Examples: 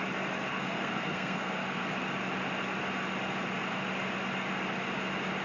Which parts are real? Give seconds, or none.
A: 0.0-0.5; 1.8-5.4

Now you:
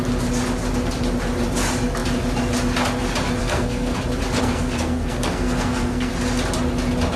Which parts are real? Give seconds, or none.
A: 0.0-3.4; 4.0-4.4; 6.1-7.2

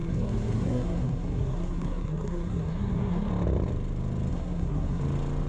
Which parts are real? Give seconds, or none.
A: 3.3-4.3; 5.0-5.5